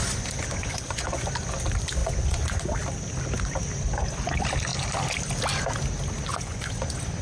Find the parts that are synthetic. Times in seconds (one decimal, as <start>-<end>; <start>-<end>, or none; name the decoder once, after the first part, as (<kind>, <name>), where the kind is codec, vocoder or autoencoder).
0.0-1.3 (vocoder, Vocos); 2.0-2.6; 6.3-7.2